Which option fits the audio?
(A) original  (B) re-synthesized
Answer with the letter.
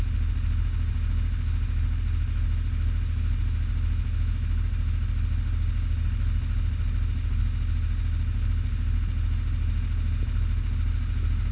A